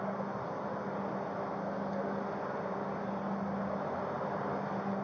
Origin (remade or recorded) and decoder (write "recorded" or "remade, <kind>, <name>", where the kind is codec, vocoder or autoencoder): recorded